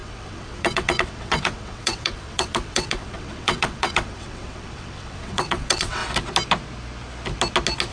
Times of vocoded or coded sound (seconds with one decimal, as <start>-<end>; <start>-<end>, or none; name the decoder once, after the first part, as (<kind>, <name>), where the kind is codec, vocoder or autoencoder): 0.0-6.0 (vocoder, WaveNeXt)